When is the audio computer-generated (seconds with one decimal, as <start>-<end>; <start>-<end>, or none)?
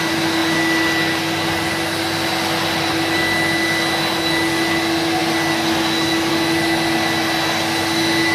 none